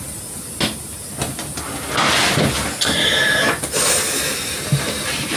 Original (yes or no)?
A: yes